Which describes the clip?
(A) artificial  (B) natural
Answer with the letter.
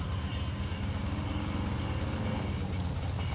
B